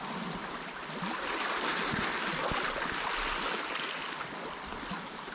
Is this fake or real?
real